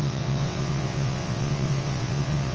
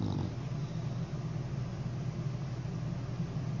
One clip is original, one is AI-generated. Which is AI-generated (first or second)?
first